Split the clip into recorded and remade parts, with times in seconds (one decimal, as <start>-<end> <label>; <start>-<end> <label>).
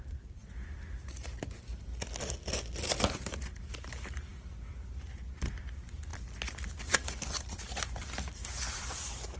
0.0-1.9 remade; 1.9-3.1 recorded; 3.1-6.1 remade; 6.1-6.7 recorded; 6.7-9.4 remade